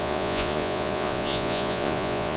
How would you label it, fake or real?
fake